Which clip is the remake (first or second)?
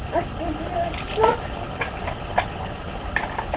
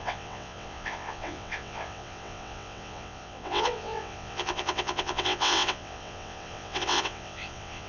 second